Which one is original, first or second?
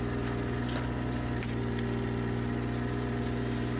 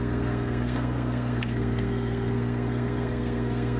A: first